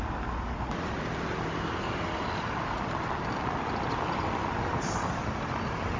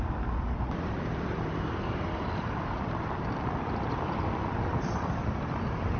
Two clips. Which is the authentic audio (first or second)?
first